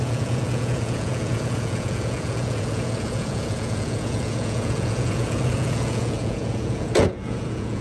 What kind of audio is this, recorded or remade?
remade